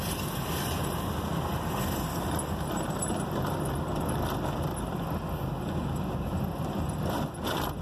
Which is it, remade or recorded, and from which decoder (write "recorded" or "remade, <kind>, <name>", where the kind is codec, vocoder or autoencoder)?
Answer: recorded